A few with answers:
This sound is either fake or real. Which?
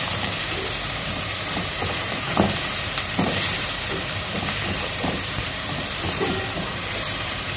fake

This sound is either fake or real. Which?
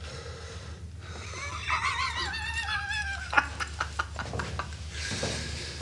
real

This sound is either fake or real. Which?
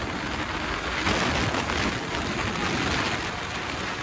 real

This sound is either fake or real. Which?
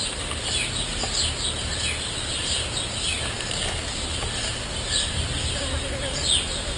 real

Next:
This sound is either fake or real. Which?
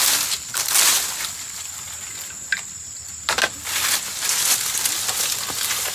fake